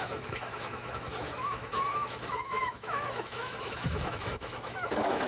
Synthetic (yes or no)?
yes